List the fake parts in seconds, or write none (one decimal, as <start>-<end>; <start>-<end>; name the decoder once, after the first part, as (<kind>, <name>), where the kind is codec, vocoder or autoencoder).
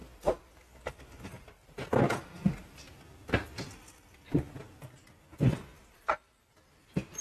none